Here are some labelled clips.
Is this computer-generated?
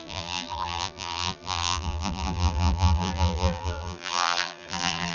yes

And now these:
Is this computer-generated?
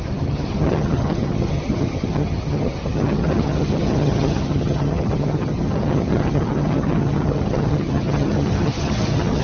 yes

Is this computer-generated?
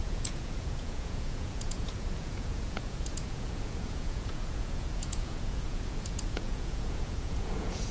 yes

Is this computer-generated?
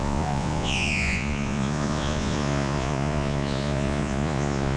yes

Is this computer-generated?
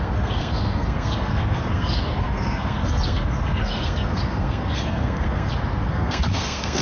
yes